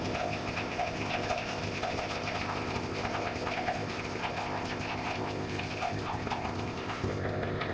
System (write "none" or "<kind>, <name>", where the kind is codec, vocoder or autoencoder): codec, ZipCodec